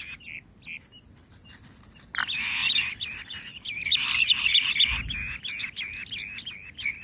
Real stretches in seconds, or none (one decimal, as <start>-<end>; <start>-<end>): 0.0-2.6; 4.3-7.0

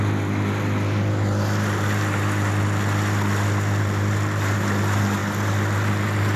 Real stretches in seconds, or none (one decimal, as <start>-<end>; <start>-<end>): 0.0-6.4

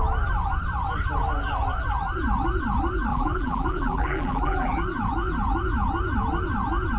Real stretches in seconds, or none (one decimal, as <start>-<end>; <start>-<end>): 0.0-3.1; 4.7-7.0

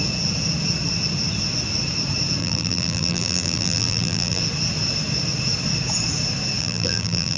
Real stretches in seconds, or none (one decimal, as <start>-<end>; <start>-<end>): 0.0-2.4; 4.4-6.6

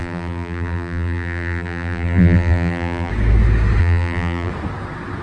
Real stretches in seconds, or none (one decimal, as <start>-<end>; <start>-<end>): 3.1-3.8; 4.5-5.2

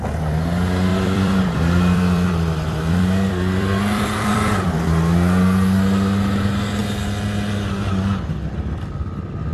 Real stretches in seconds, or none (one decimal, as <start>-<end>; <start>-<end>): 0.0-0.9; 4.7-9.5

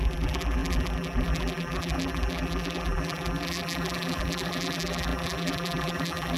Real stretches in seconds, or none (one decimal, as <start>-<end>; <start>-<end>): none